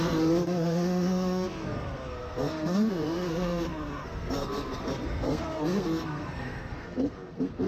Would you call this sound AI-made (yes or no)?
yes